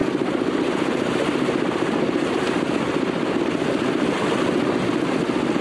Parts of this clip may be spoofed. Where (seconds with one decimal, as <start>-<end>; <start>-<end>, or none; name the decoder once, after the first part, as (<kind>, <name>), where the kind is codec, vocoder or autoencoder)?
none